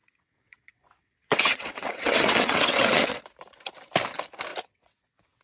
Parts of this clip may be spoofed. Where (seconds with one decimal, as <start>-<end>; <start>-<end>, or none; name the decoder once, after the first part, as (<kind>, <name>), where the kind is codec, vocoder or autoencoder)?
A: 0.0-3.2 (vocoder, WaveNeXt); 4.5-5.4